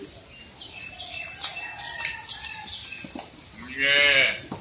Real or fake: real